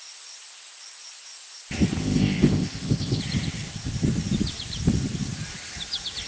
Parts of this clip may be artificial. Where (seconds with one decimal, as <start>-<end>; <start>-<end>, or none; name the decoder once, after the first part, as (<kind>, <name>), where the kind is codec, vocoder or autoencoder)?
2.0-3.2 (codec, ZipCodec)